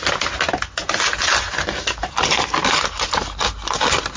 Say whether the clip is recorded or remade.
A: recorded